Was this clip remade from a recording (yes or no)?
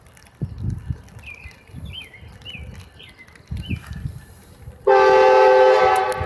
no